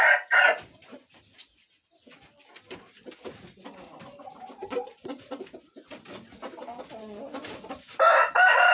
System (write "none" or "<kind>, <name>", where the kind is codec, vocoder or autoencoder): none